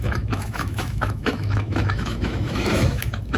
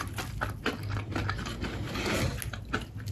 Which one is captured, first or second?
second